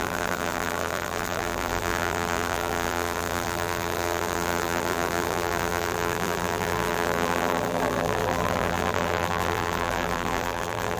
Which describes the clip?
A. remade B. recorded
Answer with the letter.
A